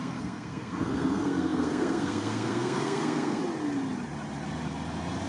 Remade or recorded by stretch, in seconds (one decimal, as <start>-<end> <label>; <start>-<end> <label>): 0.0-3.4 remade; 3.4-5.3 recorded

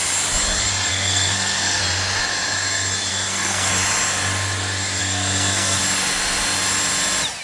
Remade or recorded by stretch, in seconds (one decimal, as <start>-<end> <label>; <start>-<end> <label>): 0.0-0.9 recorded; 0.9-1.8 remade; 1.8-3.1 recorded; 3.1-3.7 remade; 3.7-5.0 recorded; 5.0-5.8 remade; 5.8-7.4 recorded

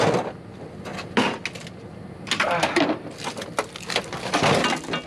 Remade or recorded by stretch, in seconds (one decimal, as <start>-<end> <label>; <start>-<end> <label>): 0.0-5.1 recorded

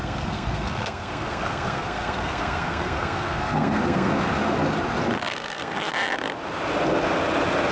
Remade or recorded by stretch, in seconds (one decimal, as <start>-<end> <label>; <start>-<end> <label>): 0.0-4.1 remade; 4.1-5.3 recorded; 5.3-5.9 remade; 5.9-7.7 recorded

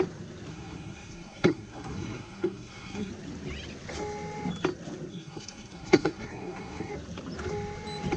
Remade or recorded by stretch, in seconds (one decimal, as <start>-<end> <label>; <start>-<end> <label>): 0.0-0.5 recorded; 0.5-3.1 remade; 3.1-5.1 recorded; 5.1-6.9 remade; 6.9-8.2 recorded

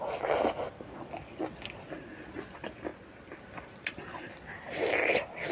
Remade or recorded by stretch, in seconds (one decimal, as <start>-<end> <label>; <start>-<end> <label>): 0.0-5.5 recorded

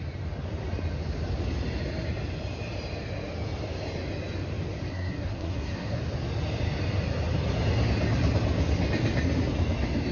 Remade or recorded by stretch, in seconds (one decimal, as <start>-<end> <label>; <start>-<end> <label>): 0.0-4.9 recorded; 4.9-6.0 remade; 6.0-10.1 recorded

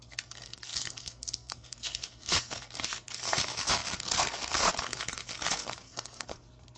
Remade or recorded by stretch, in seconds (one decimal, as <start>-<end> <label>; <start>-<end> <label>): 0.0-6.8 remade